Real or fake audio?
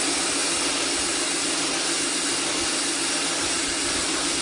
real